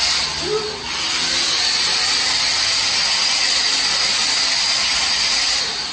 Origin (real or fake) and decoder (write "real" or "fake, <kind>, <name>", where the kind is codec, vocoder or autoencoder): real